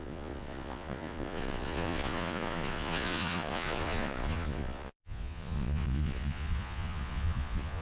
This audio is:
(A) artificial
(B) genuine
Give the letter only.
A